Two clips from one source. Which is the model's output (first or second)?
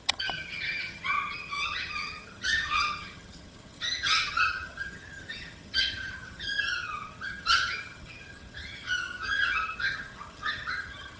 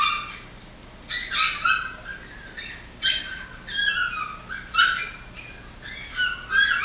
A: first